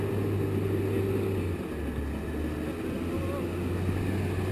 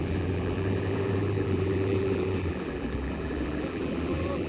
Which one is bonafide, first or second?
first